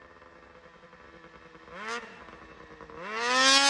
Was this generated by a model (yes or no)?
no